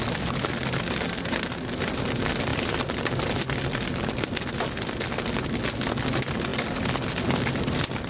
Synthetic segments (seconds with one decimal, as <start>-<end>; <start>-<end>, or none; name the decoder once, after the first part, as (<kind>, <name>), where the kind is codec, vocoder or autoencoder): none